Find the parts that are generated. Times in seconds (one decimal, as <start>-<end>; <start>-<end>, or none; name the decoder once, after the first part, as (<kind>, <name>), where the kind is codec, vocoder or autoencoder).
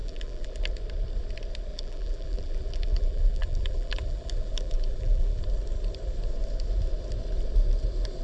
0.0-0.6 (vocoder, BigVGAN v2); 1.7-5.4